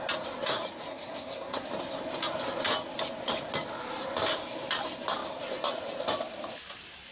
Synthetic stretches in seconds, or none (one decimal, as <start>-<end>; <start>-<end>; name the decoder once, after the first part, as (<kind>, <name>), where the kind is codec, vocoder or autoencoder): 0.9-1.7 (codec, SNAC)